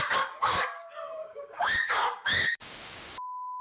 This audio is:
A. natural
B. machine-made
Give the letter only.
B